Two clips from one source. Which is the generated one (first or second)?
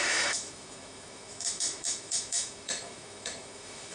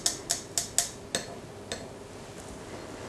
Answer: first